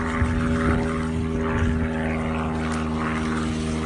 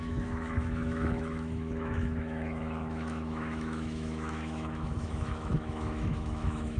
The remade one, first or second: second